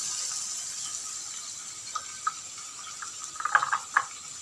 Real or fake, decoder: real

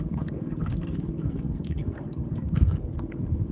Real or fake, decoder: fake, codec, SNAC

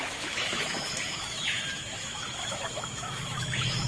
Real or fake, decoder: fake, autoencoder, DAC-VAE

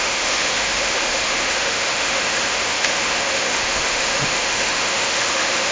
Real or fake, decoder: fake, autoencoder, DAC-VAE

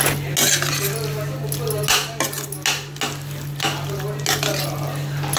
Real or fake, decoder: real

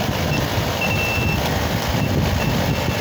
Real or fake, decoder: real